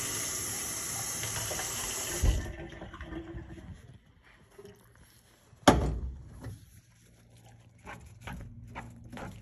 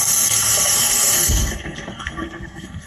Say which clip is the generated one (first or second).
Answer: second